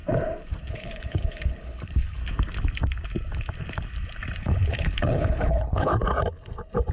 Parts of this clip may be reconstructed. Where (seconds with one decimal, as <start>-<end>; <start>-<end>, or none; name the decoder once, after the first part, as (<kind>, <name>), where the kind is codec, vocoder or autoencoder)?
0.7-2.2 (codec, HILCodec); 4.4-5.9